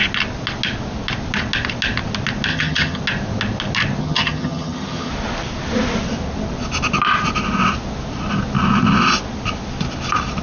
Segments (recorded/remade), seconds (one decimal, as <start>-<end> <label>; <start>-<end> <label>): 0.0-2.5 recorded; 2.5-3.0 remade; 3.0-4.0 recorded; 4.0-5.1 remade; 5.1-10.4 recorded